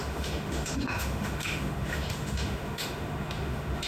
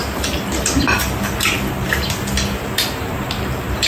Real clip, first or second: second